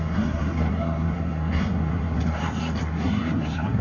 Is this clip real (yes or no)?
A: no